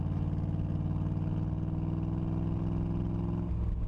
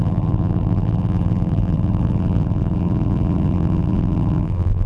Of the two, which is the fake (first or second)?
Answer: second